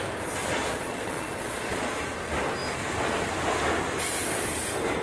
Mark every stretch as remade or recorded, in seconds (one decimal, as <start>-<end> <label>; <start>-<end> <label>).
0.0-0.4 recorded; 0.4-2.0 remade; 2.0-5.0 recorded